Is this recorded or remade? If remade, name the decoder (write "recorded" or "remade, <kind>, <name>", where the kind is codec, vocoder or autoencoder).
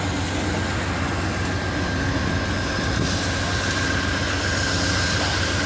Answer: recorded